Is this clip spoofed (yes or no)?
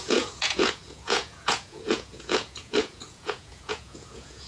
yes